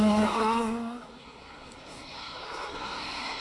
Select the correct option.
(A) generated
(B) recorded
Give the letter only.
A